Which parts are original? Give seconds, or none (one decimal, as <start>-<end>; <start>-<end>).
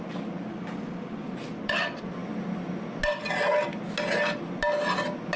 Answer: 0.0-0.5; 1.2-5.4